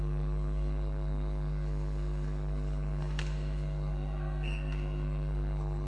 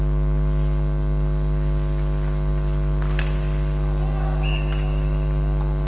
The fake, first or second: first